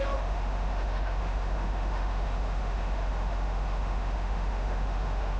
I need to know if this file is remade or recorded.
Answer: remade